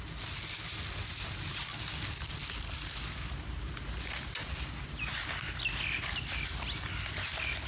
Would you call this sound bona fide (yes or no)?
yes